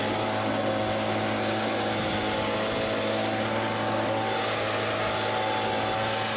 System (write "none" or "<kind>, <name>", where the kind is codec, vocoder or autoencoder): none